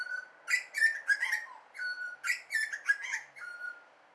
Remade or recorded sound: recorded